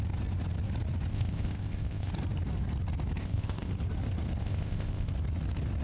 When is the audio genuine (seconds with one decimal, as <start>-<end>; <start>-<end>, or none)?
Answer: 0.0-1.1; 2.1-3.2; 3.7-4.4; 5.1-5.8